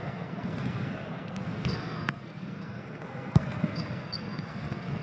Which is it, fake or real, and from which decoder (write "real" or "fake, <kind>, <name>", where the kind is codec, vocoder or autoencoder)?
fake, codec, SNAC